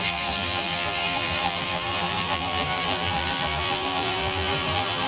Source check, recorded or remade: remade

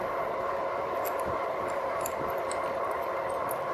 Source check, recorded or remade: remade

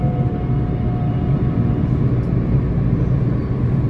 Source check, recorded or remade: recorded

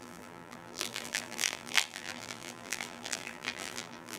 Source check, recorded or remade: remade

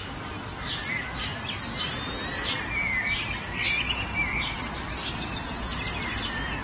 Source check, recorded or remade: recorded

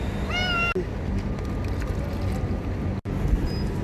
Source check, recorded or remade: recorded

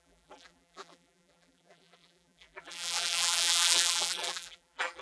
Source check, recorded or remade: remade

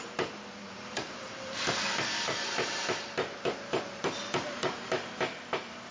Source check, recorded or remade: remade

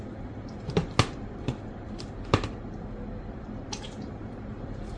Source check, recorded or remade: recorded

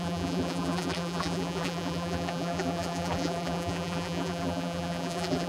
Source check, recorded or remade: remade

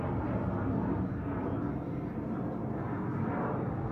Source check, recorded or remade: recorded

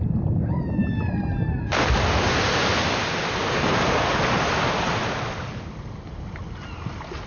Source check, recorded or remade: recorded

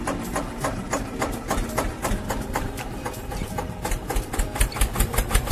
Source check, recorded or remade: remade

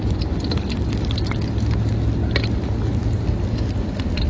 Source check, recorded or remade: recorded